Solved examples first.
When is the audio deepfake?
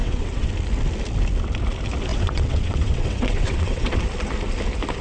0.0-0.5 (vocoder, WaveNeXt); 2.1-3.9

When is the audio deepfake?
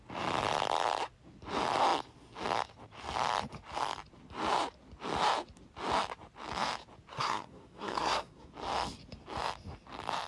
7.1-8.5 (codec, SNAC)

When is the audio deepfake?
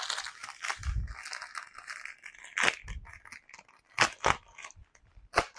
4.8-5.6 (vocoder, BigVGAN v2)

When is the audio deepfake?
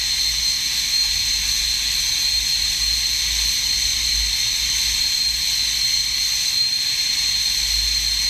0.4-1.1 (autoencoder, DAC-VAE)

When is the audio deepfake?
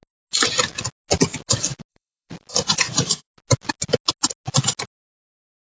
1.9-3.2 (vocoder, BigVGAN v2)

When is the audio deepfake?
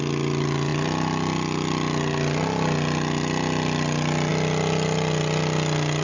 none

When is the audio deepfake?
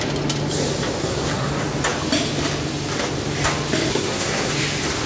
1.0-1.5 (codec, SNAC); 3.9-4.5